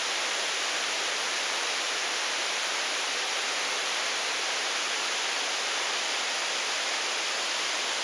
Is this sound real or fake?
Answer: real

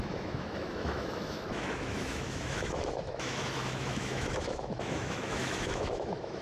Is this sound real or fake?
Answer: fake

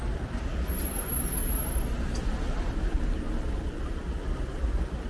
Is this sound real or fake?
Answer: real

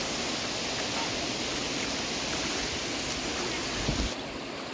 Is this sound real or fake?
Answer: real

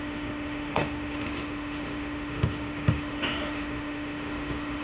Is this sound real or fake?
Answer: fake